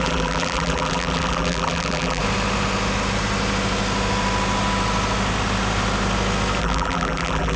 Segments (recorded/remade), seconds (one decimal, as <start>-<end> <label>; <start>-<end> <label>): 0.0-2.2 remade; 2.2-6.6 recorded; 6.6-7.6 remade